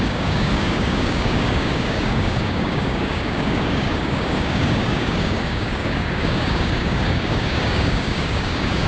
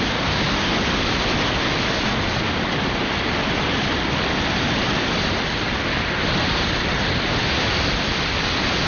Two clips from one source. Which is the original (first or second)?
second